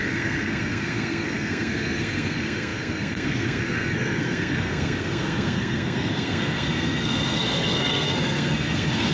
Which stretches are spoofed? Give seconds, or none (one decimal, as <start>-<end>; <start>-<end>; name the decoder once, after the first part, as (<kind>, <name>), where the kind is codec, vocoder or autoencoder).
0.0-9.1 (codec, SNAC)